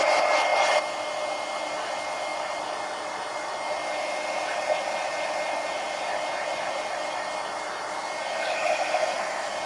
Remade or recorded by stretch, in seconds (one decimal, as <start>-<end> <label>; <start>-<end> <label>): 0.0-9.7 recorded